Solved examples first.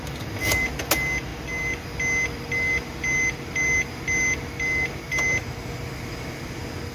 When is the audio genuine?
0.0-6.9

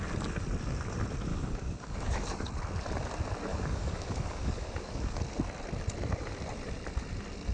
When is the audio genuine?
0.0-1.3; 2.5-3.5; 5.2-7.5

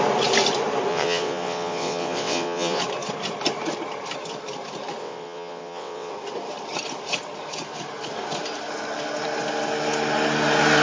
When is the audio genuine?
0.0-0.9; 2.8-5.0; 6.1-10.8

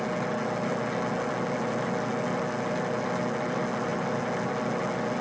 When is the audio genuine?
0.0-5.2